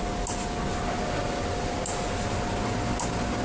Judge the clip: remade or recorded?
recorded